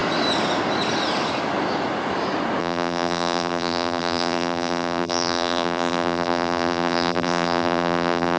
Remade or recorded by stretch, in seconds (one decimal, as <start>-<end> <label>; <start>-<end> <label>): 0.0-2.6 recorded; 2.6-8.4 remade